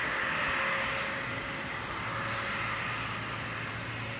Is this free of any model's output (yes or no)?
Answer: yes